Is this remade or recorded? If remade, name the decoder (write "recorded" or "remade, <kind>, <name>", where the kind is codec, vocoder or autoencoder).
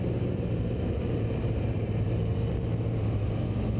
remade, vocoder, BigVGAN v2